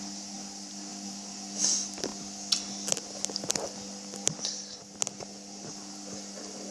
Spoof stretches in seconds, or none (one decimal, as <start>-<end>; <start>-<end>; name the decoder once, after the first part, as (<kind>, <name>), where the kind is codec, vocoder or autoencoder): none